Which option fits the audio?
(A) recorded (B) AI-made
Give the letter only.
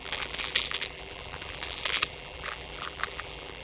B